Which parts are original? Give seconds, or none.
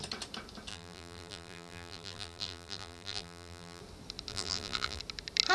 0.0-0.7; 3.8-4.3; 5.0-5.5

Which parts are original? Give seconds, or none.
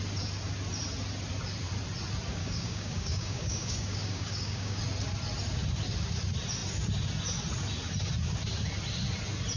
0.0-2.4; 4.8-9.6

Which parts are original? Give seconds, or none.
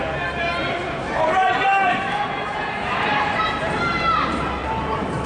0.0-0.8; 3.9-4.6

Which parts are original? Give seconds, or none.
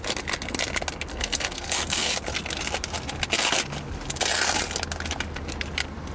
0.0-1.1; 2.1-6.1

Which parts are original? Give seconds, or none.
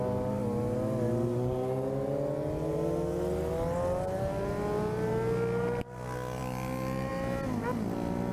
0.0-8.3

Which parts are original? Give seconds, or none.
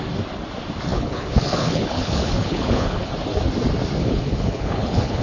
0.0-0.9; 3.1-4.0